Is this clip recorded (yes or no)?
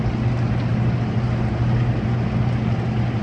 yes